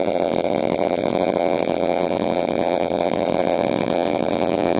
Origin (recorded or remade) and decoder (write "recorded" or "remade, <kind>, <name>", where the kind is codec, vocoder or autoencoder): remade, vocoder, BigVGAN v2